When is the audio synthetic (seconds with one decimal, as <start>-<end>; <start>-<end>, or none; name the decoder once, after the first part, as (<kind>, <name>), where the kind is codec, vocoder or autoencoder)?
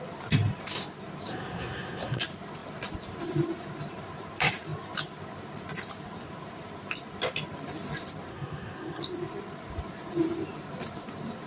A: 1.3-2.2 (codec, SNAC); 8.3-9.0